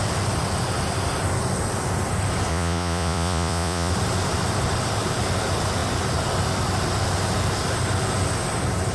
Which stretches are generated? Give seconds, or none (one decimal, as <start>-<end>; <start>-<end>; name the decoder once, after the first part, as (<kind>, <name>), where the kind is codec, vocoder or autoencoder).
2.5-3.9 (vocoder, Vocos)